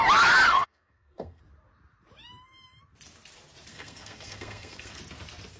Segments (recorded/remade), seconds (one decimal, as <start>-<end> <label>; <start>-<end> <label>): 0.0-0.5 recorded; 0.5-1.4 remade; 1.4-3.7 recorded; 3.7-5.0 remade; 5.0-5.6 recorded